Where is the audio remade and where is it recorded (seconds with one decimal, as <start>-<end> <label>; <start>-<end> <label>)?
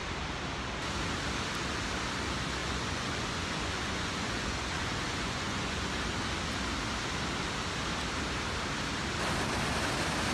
0.0-2.6 recorded; 2.6-5.9 remade; 5.9-10.3 recorded